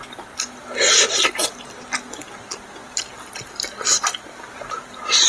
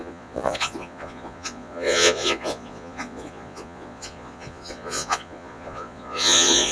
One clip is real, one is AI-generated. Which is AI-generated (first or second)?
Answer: second